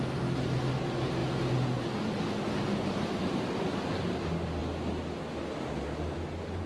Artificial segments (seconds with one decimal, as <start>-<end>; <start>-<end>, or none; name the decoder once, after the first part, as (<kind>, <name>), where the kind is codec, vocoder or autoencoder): none